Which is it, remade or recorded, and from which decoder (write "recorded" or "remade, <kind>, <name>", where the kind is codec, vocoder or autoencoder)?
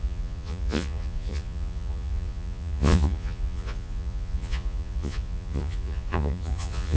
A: remade, vocoder, Vocos